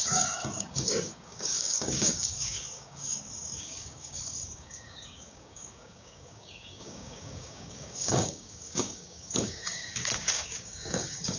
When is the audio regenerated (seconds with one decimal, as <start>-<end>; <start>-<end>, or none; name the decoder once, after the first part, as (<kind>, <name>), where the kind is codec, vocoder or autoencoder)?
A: 0.0-11.4 (codec, DAC)